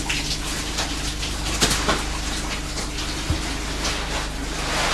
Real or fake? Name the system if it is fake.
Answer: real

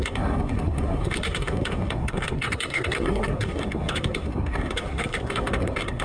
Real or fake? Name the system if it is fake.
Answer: fake, codec, SNAC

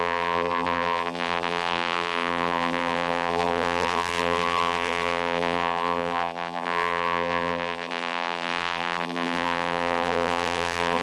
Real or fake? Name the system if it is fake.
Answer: fake, vocoder, BigVGAN v2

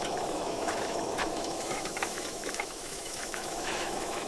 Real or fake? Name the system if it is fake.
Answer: fake, autoencoder, DAC-VAE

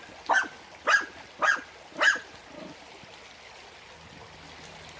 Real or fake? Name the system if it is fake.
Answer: real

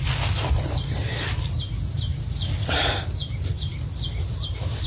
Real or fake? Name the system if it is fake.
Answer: real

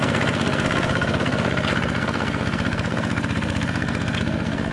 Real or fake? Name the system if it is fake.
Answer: fake, codec, SNAC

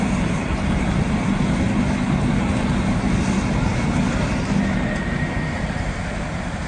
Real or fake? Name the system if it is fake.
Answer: fake, vocoder, BigVGAN v2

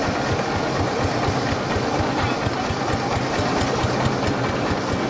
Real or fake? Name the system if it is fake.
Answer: real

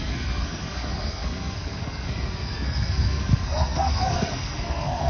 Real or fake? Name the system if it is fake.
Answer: fake, codec, SNAC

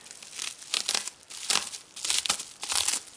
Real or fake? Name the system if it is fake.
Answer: real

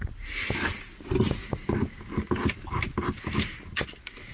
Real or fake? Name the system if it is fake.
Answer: real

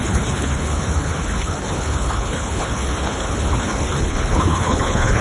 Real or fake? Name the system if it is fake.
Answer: fake, codec, HILCodec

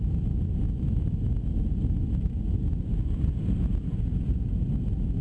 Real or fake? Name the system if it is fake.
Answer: real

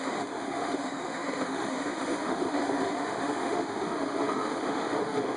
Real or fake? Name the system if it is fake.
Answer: fake, autoencoder, DAC-VAE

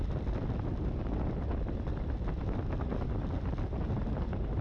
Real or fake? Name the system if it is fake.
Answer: real